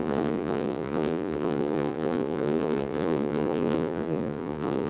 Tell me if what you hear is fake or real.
fake